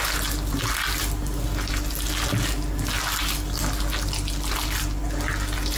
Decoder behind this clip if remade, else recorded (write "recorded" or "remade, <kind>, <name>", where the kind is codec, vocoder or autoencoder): recorded